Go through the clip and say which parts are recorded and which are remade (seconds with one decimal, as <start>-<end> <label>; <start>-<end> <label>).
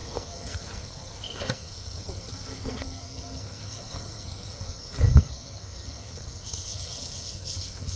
0.0-8.0 remade